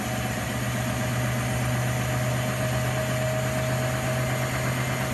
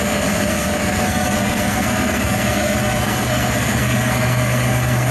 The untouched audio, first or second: first